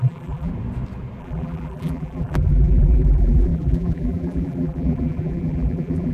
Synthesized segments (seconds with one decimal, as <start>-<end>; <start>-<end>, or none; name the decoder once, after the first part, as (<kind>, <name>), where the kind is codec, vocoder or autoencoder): 0.0-0.5 (vocoder, BigVGAN v2); 1.2-6.1